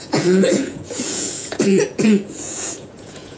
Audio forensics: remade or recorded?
remade